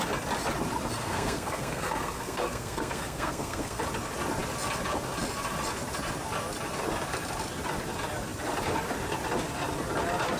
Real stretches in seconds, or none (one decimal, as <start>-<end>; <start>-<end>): 0.0-1.0; 3.8-10.4